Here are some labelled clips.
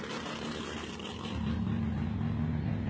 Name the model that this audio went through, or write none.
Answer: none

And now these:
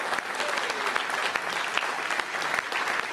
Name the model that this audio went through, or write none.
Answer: none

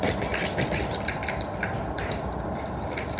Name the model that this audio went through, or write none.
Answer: none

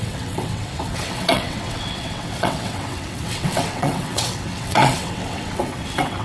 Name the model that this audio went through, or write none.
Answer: vocoder, WaveNeXt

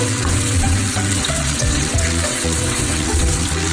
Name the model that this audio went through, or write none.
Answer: vocoder, WaveNeXt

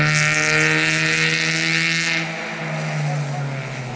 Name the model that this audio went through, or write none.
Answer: none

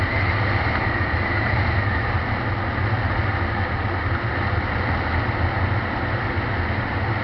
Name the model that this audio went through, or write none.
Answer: none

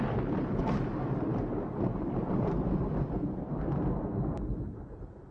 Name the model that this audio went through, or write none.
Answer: none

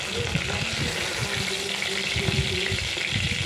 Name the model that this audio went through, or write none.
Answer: none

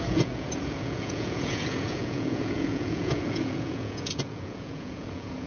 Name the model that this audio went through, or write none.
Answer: vocoder, Vocos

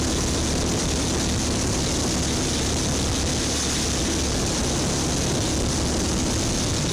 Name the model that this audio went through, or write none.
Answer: none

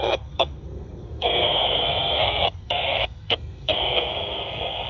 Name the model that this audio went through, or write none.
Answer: codec, SNAC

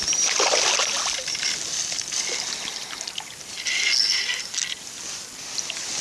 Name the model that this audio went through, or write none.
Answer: none